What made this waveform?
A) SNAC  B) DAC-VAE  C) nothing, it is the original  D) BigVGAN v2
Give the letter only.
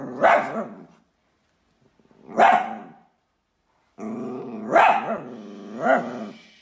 C